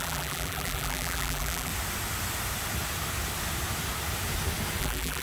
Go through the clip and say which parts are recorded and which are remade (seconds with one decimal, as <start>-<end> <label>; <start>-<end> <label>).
0.0-1.7 remade; 1.7-4.8 recorded; 4.8-5.2 remade